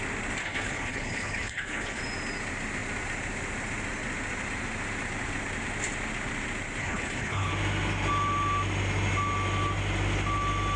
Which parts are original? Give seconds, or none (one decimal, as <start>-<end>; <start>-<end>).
0.0-0.4; 2.0-6.8; 7.5-10.8